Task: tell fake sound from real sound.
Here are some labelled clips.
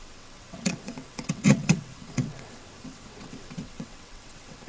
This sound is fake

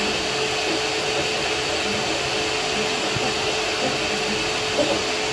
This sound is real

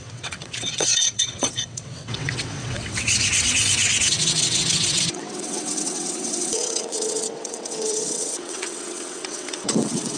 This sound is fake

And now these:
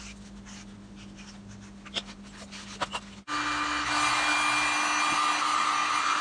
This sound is real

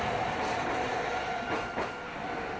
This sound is real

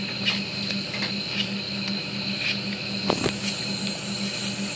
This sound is real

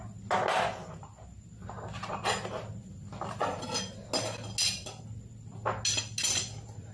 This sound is real